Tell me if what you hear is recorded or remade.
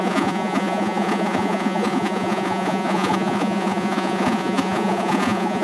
remade